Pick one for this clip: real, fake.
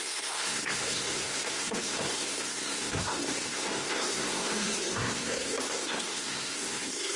fake